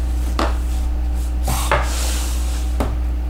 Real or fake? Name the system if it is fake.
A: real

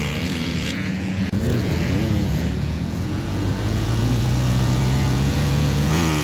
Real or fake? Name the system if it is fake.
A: fake, vocoder, Vocos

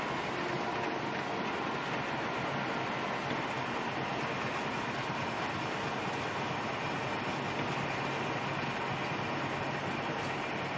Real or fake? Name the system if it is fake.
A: real